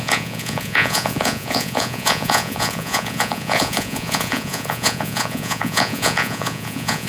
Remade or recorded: remade